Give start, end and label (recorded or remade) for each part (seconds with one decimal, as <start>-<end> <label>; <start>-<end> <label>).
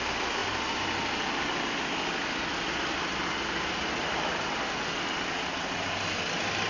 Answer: 0.0-0.4 recorded; 0.4-4.4 remade; 4.4-6.7 recorded